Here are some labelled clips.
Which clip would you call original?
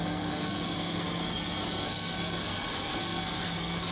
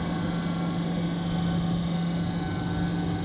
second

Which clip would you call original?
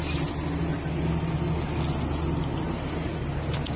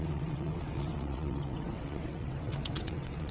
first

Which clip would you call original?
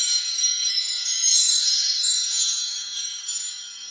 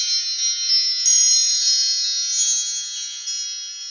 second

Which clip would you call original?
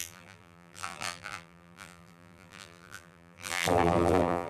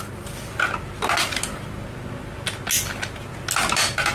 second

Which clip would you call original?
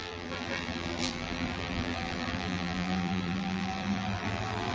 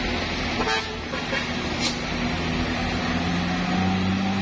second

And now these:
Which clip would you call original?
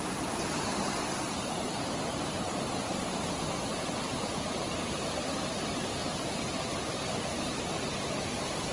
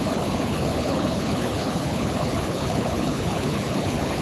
first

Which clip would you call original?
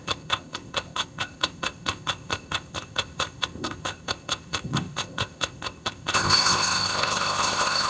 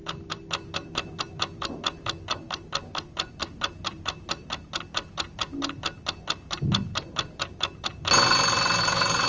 second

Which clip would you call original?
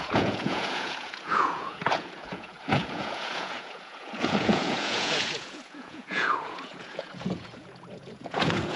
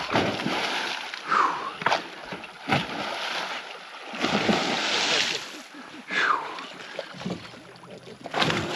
second